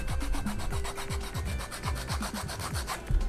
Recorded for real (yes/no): yes